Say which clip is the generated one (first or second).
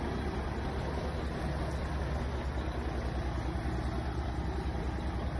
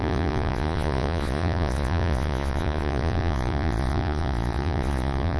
second